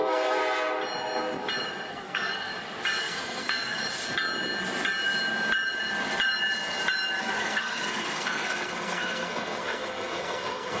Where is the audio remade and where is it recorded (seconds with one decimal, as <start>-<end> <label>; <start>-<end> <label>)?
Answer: 0.0-0.4 remade; 0.4-1.9 recorded; 1.9-2.5 remade; 2.5-3.0 recorded; 3.0-3.8 remade; 3.8-7.2 recorded; 7.2-10.8 remade